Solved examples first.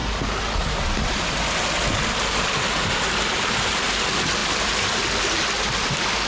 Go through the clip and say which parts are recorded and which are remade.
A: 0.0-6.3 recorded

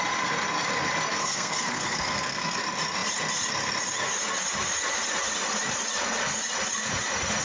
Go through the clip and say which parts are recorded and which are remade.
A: 0.0-1.2 recorded; 1.2-2.6 remade; 2.6-7.4 recorded

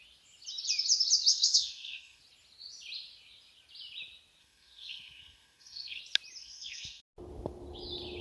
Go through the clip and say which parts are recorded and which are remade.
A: 0.0-1.3 recorded; 1.3-2.2 remade; 2.2-4.4 recorded; 4.4-6.0 remade; 6.0-6.4 recorded; 6.4-7.0 remade; 7.0-8.2 recorded

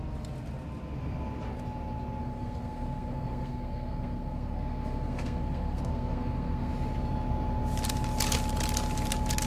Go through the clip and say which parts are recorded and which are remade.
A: 0.0-2.2 recorded; 2.2-6.7 remade; 6.7-9.5 recorded

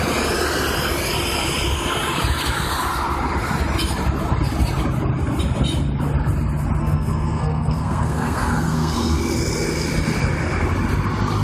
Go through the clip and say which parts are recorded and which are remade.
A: 0.0-6.8 recorded; 6.8-9.2 remade; 9.2-11.4 recorded

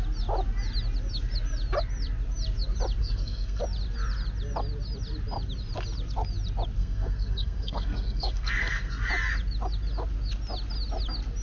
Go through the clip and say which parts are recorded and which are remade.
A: 0.0-3.0 recorded; 3.0-3.6 remade; 3.6-6.8 recorded; 6.8-9.1 remade; 9.1-11.4 recorded

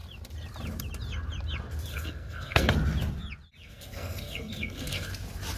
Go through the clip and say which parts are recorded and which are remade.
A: 0.0-1.9 recorded; 1.9-2.7 remade; 2.7-3.6 recorded; 3.6-5.1 remade; 5.1-5.6 recorded